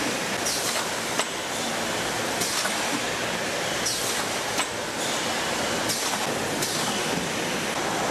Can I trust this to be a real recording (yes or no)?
yes